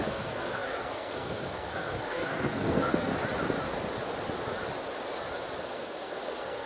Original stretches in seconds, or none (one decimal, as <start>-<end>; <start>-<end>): 3.1-5.6